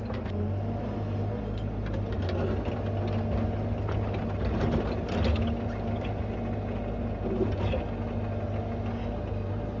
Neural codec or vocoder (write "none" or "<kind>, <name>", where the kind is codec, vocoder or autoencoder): none